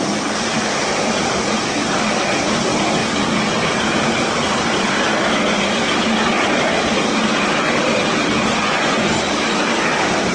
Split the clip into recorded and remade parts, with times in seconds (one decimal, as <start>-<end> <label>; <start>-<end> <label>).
0.0-8.6 recorded; 8.6-9.1 remade; 9.1-10.3 recorded